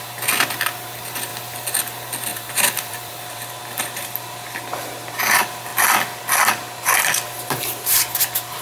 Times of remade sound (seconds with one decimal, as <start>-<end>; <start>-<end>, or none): 2.3-3.6

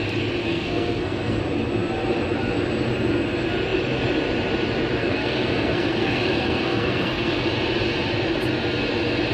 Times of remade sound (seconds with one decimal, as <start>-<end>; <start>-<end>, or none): 0.4-1.4; 5.0-7.4

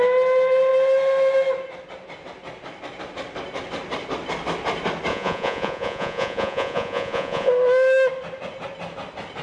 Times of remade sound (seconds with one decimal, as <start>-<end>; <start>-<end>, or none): 5.1-7.5

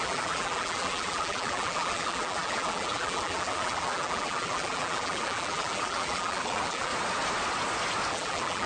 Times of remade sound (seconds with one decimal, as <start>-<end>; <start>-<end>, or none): 0.0-6.9; 8.1-8.7

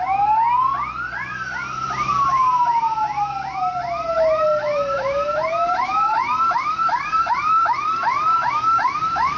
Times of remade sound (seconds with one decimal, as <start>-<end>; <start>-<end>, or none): 4.5-8.5

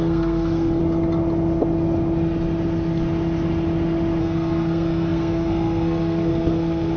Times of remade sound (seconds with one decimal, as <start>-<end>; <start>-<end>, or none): 0.0-0.8; 4.2-7.0

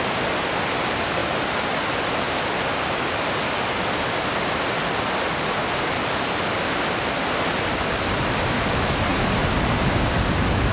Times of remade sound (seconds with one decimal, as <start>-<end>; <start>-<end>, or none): none